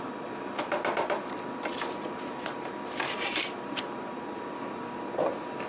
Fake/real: real